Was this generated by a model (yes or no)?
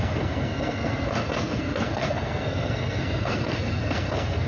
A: yes